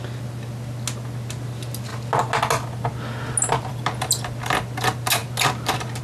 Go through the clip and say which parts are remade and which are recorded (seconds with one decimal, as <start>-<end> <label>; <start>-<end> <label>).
0.0-6.0 recorded